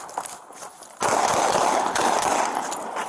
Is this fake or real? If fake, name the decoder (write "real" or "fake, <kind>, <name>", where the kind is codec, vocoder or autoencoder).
real